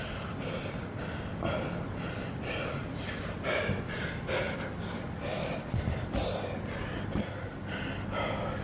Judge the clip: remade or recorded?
recorded